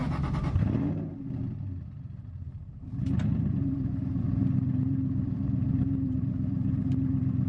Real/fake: fake